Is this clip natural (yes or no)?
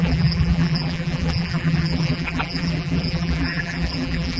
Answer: no